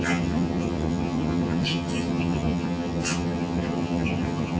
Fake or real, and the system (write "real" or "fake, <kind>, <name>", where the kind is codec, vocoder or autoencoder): fake, vocoder, HiFi-GAN